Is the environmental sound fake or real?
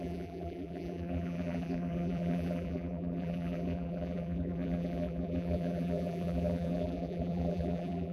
fake